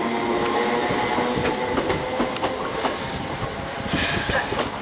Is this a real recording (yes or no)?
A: yes